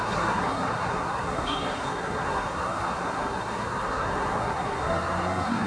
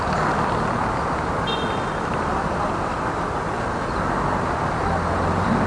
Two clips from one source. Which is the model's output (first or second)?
first